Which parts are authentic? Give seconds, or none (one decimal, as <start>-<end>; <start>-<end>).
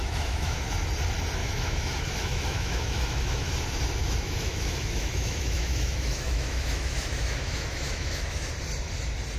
0.6-1.4; 3.5-4.0; 8.5-9.4